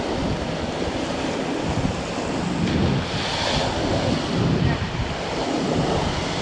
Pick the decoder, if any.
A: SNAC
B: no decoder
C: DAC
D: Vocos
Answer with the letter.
B